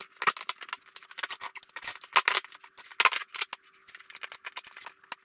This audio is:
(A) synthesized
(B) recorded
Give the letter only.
B